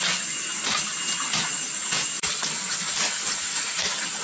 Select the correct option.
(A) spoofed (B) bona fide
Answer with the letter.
B